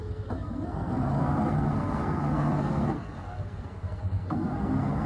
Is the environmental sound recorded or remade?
remade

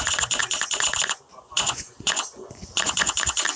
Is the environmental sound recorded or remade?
remade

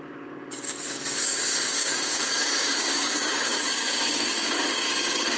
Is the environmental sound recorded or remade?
remade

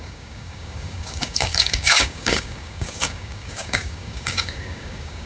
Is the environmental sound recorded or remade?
remade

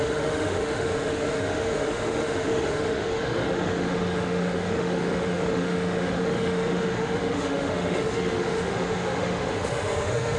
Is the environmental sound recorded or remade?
remade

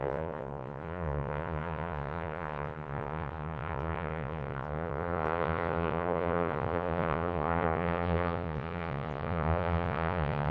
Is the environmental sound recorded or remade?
remade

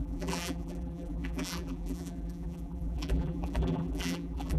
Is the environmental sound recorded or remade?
remade